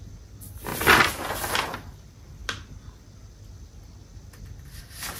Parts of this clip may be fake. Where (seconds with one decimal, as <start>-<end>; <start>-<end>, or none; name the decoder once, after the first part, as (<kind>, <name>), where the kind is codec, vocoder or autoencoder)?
0.7-1.5 (vocoder, BigVGAN v2)